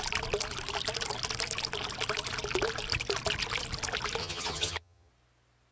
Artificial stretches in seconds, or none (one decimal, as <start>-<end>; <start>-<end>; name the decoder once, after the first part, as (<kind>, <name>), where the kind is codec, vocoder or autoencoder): 4.2-5.1 (vocoder, HiFi-GAN)